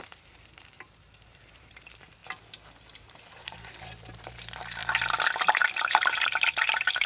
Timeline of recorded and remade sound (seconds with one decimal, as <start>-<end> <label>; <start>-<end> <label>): 0.0-2.2 remade; 2.2-3.3 recorded; 3.3-4.8 remade; 4.8-5.8 recorded; 5.8-7.1 remade